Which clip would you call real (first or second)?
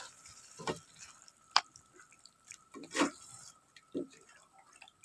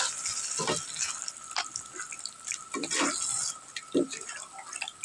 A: second